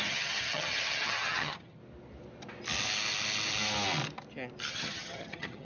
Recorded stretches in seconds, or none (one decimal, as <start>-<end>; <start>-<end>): 1.8-4.7